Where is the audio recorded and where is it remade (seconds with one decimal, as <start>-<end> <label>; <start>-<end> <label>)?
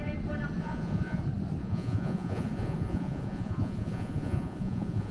0.0-0.6 recorded; 0.6-1.2 remade; 1.2-1.6 recorded; 1.6-5.1 remade